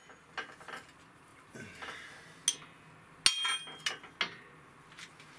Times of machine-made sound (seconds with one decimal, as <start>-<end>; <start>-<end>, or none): none